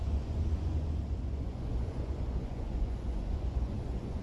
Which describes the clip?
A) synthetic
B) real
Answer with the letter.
A